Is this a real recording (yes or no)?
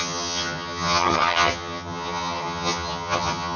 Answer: no